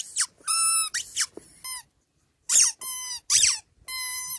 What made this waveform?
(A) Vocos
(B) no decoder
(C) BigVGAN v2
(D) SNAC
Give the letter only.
B